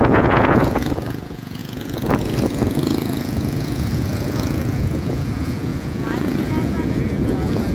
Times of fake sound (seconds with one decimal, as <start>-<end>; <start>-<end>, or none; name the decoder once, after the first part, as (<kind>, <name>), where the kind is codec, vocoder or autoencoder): 0.0-7.7 (vocoder, Vocos)